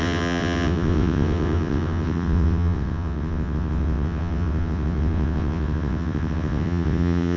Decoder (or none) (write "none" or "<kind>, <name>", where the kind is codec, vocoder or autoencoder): vocoder, WaveNeXt